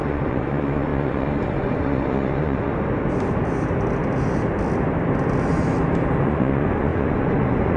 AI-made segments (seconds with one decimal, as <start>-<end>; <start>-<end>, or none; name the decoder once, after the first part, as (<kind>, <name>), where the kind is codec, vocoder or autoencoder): 0.0-2.7 (vocoder, Vocos); 6.2-7.8